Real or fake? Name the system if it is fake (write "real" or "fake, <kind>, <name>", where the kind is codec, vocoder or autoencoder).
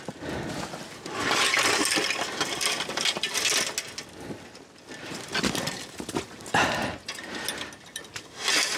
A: real